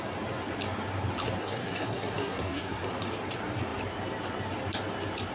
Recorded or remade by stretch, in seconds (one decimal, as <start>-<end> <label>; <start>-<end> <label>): 0.0-1.4 recorded; 1.4-2.9 remade; 2.9-5.3 recorded